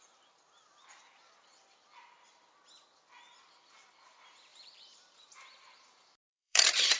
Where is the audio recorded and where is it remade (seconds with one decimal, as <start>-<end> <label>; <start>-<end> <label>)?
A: 0.0-4.5 recorded; 4.5-7.0 remade